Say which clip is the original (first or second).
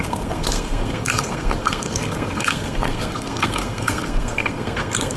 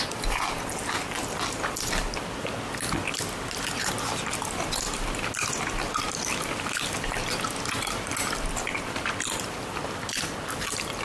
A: second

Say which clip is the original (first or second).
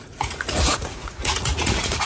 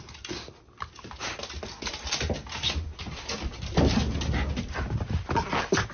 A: second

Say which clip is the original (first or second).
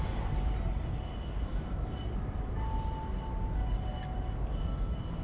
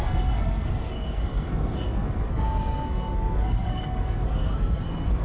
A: first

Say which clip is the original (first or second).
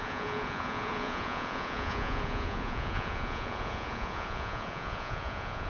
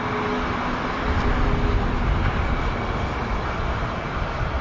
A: second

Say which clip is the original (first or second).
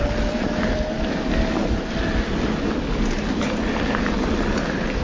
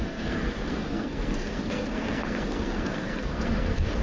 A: first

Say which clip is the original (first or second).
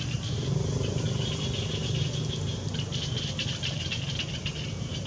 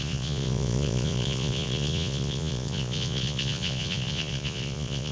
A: first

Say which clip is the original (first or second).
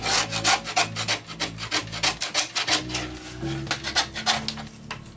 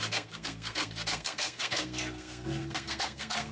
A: first